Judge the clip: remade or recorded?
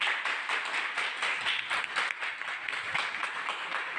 recorded